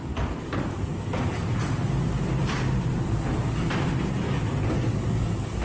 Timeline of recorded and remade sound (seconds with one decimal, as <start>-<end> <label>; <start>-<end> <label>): 0.0-5.6 recorded